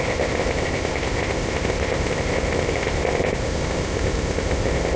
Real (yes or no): no